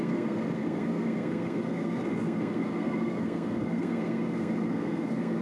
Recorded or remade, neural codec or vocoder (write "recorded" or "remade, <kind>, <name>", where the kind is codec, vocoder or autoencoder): remade, codec, SNAC